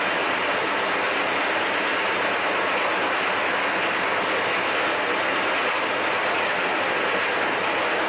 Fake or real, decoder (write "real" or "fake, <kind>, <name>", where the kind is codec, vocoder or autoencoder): real